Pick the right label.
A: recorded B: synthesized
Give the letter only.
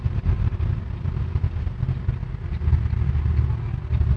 A